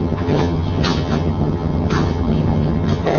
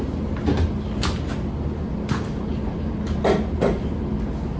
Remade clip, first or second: first